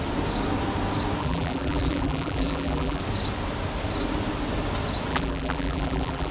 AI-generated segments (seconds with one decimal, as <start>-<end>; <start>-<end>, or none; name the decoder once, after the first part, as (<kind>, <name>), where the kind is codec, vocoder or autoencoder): 1.2-3.0 (vocoder, BigVGAN v2); 5.1-6.3

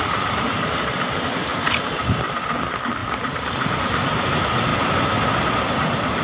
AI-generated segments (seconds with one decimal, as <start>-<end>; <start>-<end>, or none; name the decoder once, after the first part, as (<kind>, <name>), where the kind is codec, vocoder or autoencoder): none

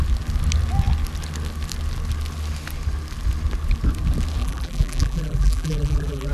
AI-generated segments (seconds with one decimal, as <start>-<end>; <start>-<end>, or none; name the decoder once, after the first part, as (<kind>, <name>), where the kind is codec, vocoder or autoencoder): 4.4-6.3 (vocoder, BigVGAN v2)